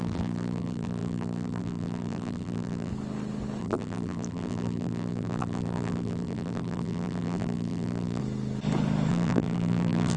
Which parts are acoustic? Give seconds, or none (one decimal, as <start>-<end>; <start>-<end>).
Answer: 2.9-3.6; 8.2-9.1